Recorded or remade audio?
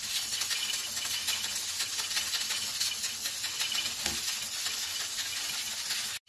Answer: recorded